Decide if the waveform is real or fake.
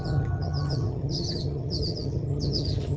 fake